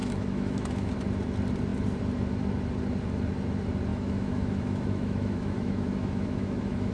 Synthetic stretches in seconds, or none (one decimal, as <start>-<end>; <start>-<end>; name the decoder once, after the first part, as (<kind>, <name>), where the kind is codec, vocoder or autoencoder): 0.0-0.9 (autoencoder, DAC-VAE); 3.9-6.9